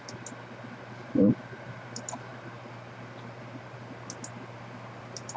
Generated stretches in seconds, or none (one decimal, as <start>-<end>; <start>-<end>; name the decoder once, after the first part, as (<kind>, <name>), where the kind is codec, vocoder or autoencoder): none